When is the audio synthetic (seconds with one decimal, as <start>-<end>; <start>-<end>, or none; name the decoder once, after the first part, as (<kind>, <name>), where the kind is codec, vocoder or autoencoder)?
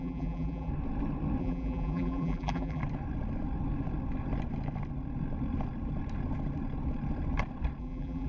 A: 0.0-0.7 (vocoder, BigVGAN v2); 1.4-2.8; 7.8-8.3